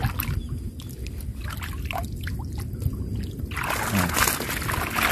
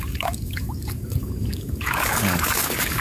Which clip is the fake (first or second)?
second